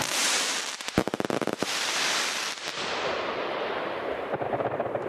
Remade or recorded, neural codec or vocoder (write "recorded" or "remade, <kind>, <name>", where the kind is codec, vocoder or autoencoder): recorded